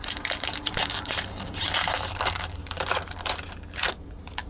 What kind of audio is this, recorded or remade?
remade